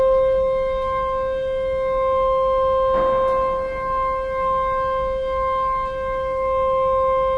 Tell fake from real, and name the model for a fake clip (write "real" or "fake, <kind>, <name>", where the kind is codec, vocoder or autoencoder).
real